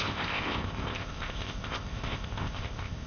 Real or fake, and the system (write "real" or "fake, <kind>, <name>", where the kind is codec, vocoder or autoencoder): fake, codec, ZipCodec